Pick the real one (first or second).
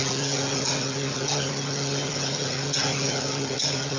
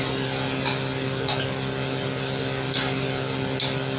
second